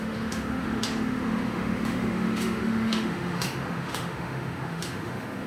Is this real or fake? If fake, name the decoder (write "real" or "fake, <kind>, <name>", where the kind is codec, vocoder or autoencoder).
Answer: fake, autoencoder, DAC-VAE